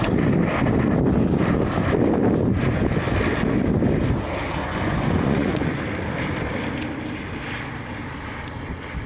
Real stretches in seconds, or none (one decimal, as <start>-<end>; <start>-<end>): 0.0-4.6; 5.8-9.1